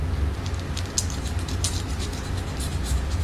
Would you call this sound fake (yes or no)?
no